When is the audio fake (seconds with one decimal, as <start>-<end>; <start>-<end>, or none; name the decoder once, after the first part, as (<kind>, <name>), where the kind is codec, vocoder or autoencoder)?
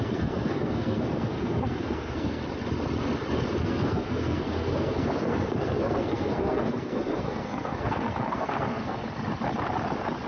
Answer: 0.0-2.4 (codec, SNAC); 3.6-9.0